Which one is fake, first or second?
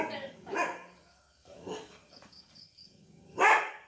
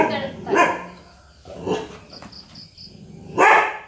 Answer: first